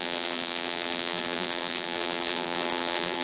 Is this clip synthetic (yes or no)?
yes